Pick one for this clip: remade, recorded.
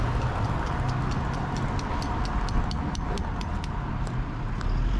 recorded